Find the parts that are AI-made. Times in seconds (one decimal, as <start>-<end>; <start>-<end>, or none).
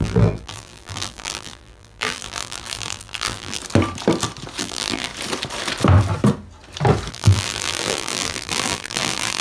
0.0-3.6; 4.6-5.1; 7.1-9.4